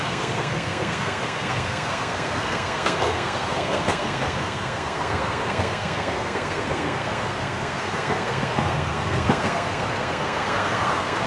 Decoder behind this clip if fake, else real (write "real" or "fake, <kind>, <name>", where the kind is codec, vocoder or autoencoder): fake, codec, SNAC